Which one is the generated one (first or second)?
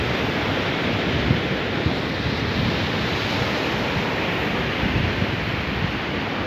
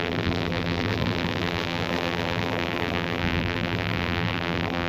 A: second